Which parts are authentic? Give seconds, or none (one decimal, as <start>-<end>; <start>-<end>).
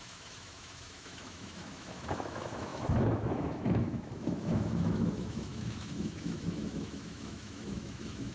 none